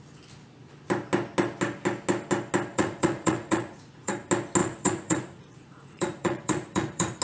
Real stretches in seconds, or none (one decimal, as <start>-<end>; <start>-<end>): 0.0-2.7; 4.1-4.6